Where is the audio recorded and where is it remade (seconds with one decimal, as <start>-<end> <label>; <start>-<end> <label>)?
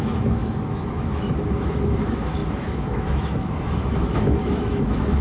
0.0-5.2 remade